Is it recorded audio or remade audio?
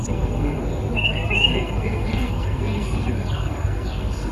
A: remade